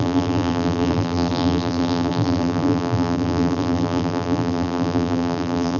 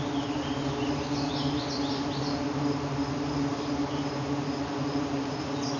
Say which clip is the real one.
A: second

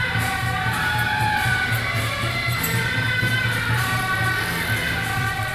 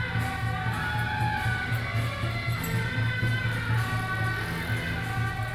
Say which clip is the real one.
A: second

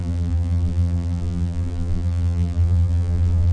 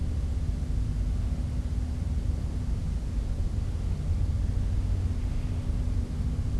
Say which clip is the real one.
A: second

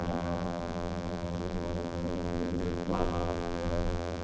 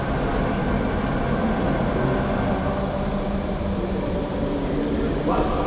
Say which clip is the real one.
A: second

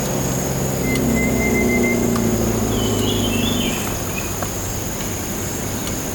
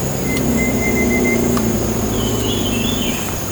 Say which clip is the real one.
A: first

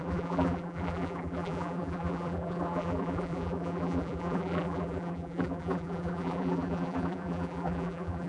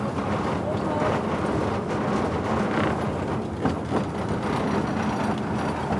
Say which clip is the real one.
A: second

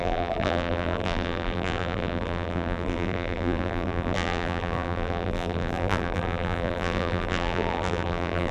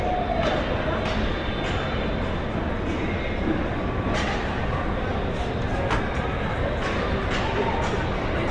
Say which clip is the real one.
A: second